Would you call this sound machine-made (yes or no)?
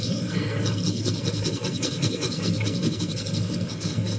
yes